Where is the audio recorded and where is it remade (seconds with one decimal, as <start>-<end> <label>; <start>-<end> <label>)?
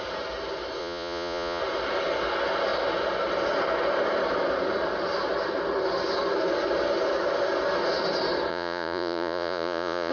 0.0-0.8 recorded; 0.8-1.6 remade; 1.6-8.5 recorded; 8.5-10.1 remade